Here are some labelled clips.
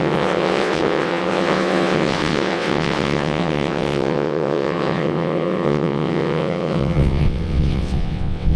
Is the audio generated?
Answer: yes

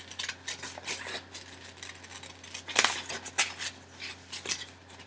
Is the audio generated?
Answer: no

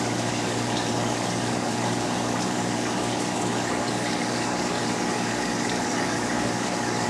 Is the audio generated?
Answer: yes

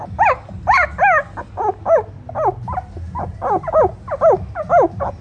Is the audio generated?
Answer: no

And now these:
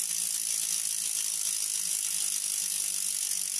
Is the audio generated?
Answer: no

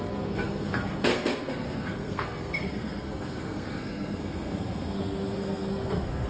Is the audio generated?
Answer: yes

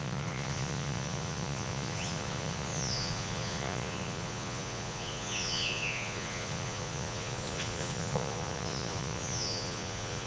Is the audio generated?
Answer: yes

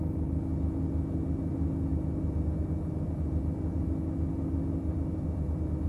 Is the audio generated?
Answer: no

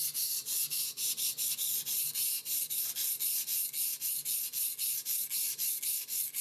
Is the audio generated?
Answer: no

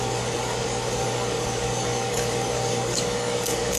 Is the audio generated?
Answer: yes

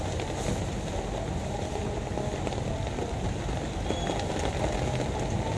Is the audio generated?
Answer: no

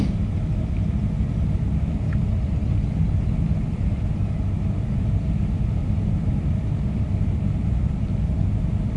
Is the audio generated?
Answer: no